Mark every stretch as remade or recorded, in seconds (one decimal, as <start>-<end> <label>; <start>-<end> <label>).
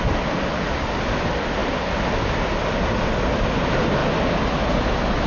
0.0-5.3 recorded